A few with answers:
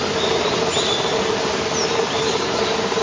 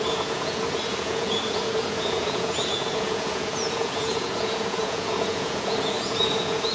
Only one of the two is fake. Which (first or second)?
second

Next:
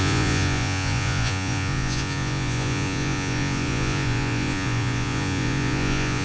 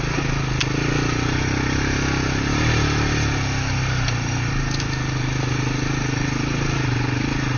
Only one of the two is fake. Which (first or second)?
first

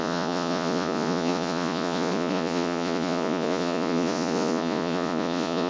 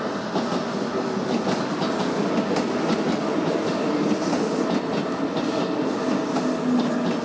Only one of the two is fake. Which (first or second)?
first